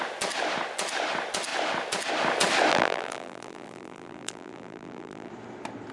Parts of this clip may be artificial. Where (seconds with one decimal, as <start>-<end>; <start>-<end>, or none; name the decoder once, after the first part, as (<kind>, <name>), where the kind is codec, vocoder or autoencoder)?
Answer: 2.7-5.3 (vocoder, BigVGAN v2)

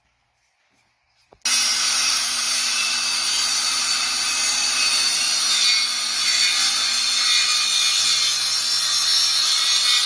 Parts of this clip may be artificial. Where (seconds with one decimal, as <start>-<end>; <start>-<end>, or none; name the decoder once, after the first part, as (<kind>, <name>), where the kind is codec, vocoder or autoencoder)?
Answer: 1.7-5.2 (vocoder, BigVGAN v2); 9.3-10.1

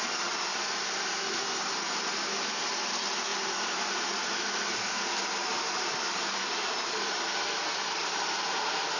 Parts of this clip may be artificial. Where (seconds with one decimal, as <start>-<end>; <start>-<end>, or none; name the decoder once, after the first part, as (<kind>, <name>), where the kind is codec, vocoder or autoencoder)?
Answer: 0.5-1.1 (vocoder, BigVGAN v2); 3.3-7.4; 8.0-9.0

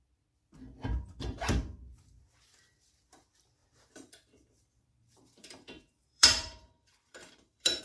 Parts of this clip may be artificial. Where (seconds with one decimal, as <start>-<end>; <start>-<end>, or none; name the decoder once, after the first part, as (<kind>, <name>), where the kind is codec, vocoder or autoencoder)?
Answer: 0.9-1.5 (vocoder, BigVGAN v2); 3.6-7.8

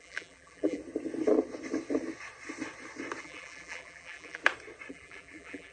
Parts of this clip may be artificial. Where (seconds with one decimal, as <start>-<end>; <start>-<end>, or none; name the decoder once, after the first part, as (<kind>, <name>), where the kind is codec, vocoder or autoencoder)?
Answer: 0.0-0.8 (vocoder, BigVGAN v2); 3.2-4.4; 4.9-5.7

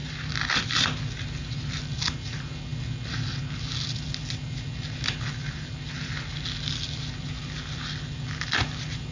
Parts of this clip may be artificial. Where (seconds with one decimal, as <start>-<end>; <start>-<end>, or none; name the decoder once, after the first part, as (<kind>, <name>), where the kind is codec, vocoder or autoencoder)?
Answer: 0.0-1.8 (vocoder, BigVGAN v2)

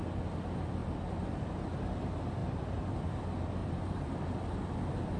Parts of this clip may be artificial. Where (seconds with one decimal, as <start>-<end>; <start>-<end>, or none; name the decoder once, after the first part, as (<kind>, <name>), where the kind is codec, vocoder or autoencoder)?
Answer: 0.8-1.5 (vocoder, BigVGAN v2); 2.4-3.1; 3.6-4.3